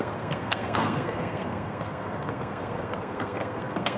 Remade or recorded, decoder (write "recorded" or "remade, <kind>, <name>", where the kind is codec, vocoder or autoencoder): remade, codec, SNAC